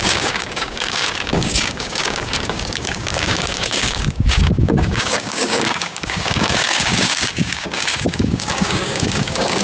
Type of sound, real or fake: fake